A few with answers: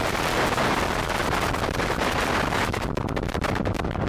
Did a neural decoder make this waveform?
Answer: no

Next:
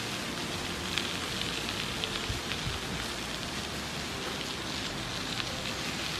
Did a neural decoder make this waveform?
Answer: no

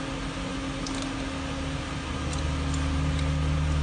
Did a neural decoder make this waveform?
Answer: no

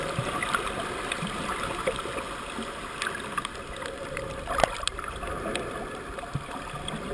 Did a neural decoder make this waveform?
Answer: no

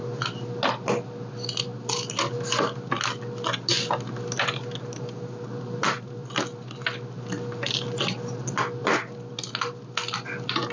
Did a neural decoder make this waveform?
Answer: no